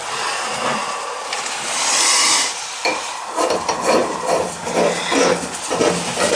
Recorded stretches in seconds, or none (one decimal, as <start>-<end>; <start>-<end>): 0.0-0.8; 3.0-4.0; 5.0-6.4